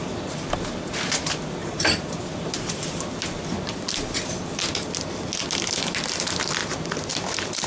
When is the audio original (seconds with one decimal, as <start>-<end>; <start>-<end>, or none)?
0.0-1.6; 2.8-6.6